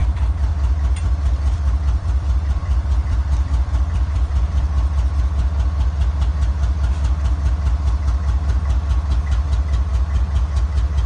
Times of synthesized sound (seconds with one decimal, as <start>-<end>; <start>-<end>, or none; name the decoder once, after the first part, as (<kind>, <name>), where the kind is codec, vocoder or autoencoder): 0.0-5.2 (vocoder, BigVGAN v2)